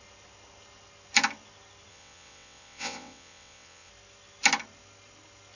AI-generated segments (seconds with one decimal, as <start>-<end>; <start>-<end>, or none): 1.9-3.9